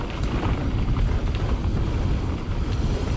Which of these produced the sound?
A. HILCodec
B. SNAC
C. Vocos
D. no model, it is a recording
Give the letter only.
D